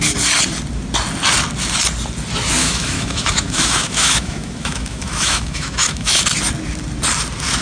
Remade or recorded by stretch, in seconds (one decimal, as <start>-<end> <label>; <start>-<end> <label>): 0.0-2.6 recorded; 2.6-6.2 remade; 6.2-7.6 recorded

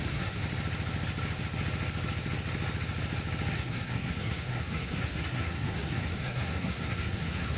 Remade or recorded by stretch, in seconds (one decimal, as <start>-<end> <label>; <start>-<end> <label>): 0.0-0.4 remade; 0.4-3.5 recorded; 3.5-7.6 remade

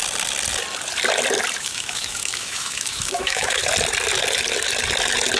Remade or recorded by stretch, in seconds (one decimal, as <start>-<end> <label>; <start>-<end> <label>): 0.0-1.6 recorded; 1.6-3.6 remade; 3.6-5.4 recorded

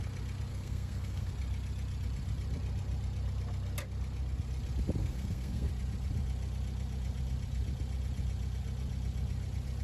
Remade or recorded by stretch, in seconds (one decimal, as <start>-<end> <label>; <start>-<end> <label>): 0.0-0.5 recorded; 0.5-1.3 remade; 1.3-5.0 recorded; 5.0-5.7 remade; 5.7-9.8 recorded

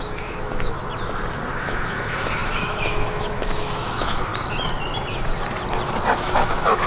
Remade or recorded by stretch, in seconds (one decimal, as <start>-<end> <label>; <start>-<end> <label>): 0.0-0.8 remade; 0.8-1.5 recorded; 1.5-4.3 remade; 4.3-6.2 recorded; 6.2-6.9 remade

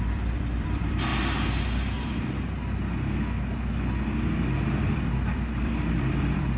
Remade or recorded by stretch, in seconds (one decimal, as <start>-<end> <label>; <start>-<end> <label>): 0.0-1.1 remade; 1.1-4.8 recorded; 4.8-6.6 remade

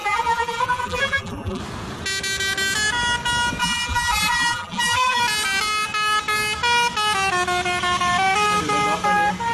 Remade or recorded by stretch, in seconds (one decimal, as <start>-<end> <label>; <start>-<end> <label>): 0.0-1.6 remade; 1.6-3.6 recorded; 3.6-5.2 remade; 5.2-9.5 recorded

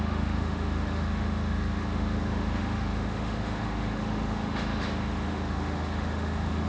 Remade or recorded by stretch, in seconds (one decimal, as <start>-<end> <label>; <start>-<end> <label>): 0.0-6.7 remade